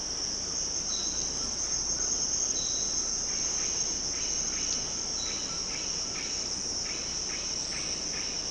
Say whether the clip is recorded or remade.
recorded